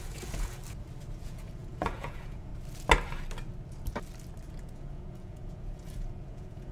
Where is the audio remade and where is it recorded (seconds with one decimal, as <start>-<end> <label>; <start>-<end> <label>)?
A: 0.0-0.6 remade; 0.6-1.2 recorded; 1.2-2.5 remade; 2.5-4.5 recorded; 4.5-6.7 remade